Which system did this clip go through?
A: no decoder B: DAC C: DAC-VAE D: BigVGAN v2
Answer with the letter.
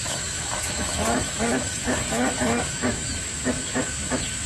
C